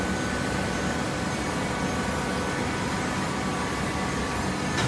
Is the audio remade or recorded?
recorded